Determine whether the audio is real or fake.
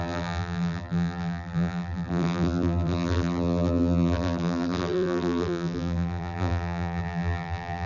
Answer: fake